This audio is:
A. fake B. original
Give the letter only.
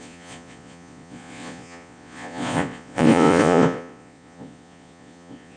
A